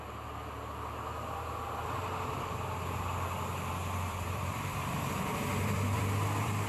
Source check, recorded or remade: remade